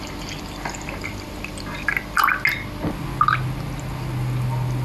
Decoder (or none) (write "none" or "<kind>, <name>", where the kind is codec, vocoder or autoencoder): none